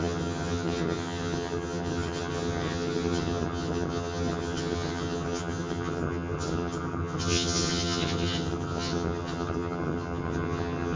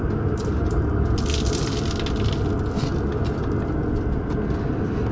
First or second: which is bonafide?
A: second